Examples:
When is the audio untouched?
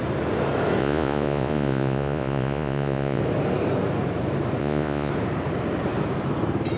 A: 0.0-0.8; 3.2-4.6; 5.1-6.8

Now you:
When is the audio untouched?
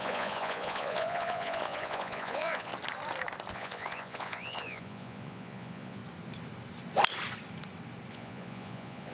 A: 2.7-3.5; 6.0-8.1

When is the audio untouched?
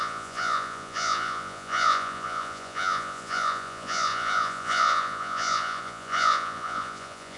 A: none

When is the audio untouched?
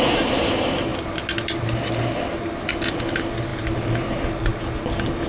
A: 0.0-5.3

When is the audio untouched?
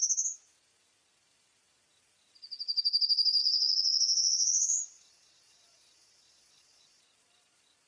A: 0.0-3.4; 7.0-7.9